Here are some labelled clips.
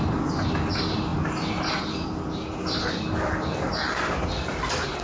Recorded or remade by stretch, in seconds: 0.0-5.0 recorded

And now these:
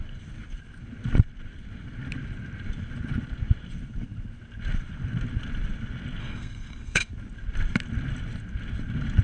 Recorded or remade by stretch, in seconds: 0.0-6.2 recorded; 6.2-7.1 remade; 7.1-9.2 recorded

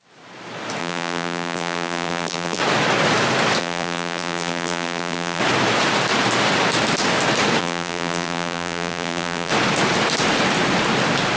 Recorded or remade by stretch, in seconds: 0.0-0.8 recorded; 0.8-2.6 remade; 2.6-3.6 recorded; 3.6-5.4 remade; 5.4-7.6 recorded; 7.6-9.5 remade; 9.5-11.4 recorded

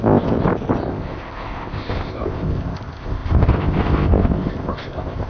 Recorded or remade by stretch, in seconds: 0.0-0.4 remade; 0.4-0.9 recorded; 0.9-5.3 remade

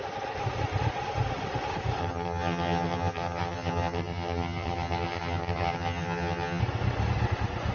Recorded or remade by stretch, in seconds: 0.0-2.0 recorded; 2.0-6.6 remade; 6.6-7.7 recorded

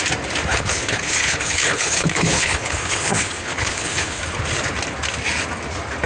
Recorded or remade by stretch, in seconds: 0.0-0.5 recorded; 0.5-4.2 remade; 4.2-6.1 recorded

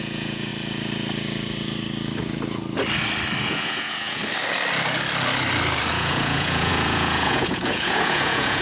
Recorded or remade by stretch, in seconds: 0.0-0.5 remade; 0.5-3.4 recorded; 3.4-4.2 remade; 4.2-5.9 recorded; 5.9-8.6 remade